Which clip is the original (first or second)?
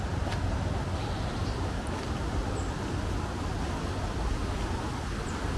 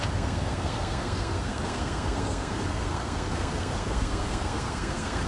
first